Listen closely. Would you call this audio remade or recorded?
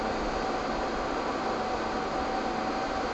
recorded